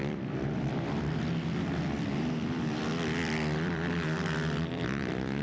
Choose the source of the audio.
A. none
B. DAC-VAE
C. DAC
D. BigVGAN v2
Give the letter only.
D